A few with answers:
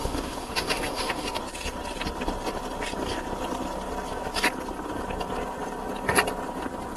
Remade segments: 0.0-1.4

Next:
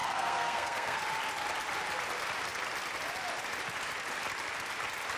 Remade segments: 0.0-1.0

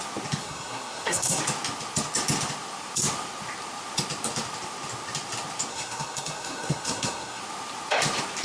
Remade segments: 0.4-1.4; 5.7-7.4